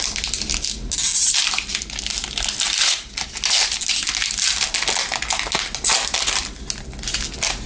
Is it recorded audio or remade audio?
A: recorded